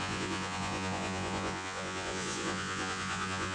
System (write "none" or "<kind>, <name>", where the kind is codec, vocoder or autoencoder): vocoder, Vocos